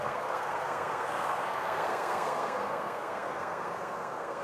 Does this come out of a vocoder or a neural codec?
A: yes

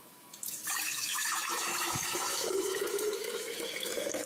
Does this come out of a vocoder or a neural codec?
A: yes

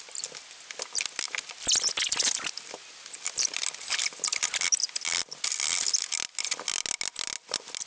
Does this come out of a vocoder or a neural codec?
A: no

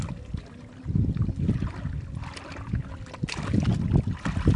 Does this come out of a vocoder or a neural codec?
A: no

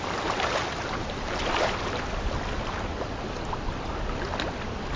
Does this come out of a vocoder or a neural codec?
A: no